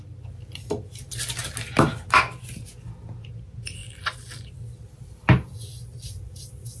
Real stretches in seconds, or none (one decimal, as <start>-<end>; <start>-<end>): 0.0-6.8